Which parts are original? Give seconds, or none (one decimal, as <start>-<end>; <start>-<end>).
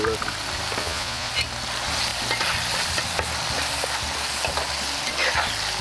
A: 0.0-0.8; 1.3-5.8